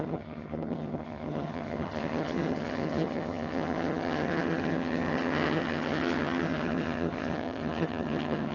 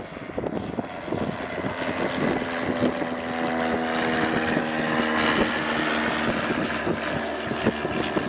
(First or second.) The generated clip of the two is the first